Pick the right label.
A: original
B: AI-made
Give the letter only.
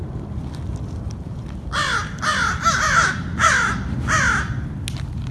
A